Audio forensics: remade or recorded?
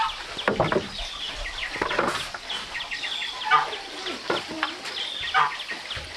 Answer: recorded